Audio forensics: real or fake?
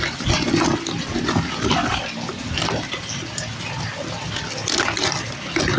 real